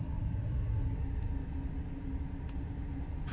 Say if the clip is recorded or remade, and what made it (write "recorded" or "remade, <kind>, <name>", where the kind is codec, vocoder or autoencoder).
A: recorded